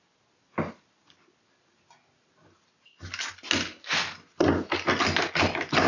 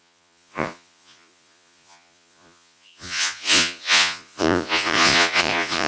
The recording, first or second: first